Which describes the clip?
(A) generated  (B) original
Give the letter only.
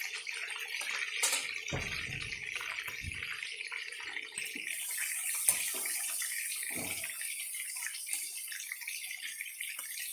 B